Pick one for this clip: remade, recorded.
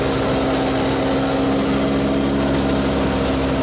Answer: recorded